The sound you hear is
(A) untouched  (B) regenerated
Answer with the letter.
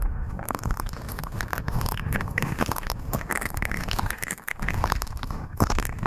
B